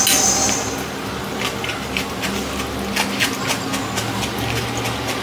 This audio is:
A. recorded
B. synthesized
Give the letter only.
A